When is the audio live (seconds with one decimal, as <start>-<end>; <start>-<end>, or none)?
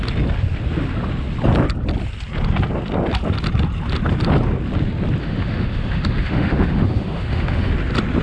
0.0-5.2; 7.7-8.2